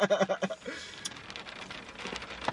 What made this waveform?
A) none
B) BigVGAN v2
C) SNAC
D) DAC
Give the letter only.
A